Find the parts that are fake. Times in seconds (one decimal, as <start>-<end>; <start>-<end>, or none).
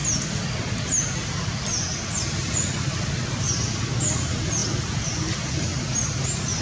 none